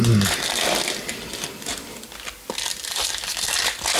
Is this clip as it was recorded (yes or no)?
no